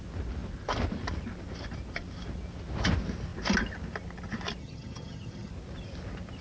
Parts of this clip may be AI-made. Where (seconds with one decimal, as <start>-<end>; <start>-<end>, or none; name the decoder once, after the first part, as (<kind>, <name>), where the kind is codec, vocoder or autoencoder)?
4.6-5.5 (vocoder, HiFi-GAN)